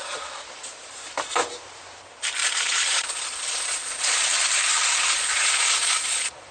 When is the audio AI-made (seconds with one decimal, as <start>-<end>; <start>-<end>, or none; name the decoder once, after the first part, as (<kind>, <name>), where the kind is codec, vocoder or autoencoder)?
2.4-4.2 (vocoder, Vocos); 4.7-6.5